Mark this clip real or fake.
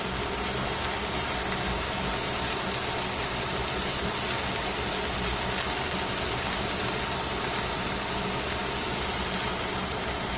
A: real